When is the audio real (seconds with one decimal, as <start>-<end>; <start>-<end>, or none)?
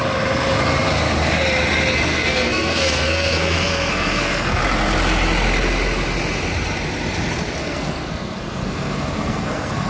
0.0-2.1; 4.6-7.6